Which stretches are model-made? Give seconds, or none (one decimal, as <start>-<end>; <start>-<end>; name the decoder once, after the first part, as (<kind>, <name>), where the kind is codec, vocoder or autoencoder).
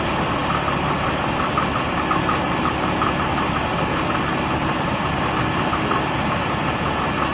none